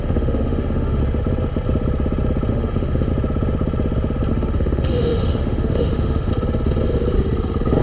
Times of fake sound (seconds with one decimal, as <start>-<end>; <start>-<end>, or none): 0.0-1.0; 2.5-3.1; 4.3-6.3